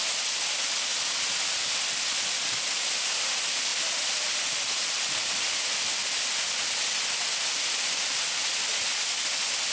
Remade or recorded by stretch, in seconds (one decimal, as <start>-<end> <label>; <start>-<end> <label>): 0.0-9.7 recorded